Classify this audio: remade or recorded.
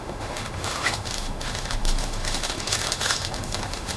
remade